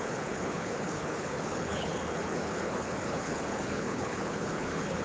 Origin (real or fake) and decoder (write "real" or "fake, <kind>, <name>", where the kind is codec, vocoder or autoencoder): fake, codec, HILCodec